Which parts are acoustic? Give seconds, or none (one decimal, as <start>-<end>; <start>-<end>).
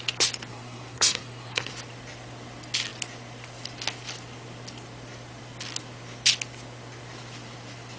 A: 0.0-0.5; 1.7-8.0